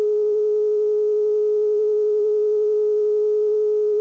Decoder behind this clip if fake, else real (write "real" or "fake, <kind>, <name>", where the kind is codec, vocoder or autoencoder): real